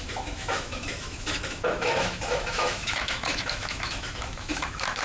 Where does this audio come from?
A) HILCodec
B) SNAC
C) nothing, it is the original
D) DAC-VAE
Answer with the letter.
D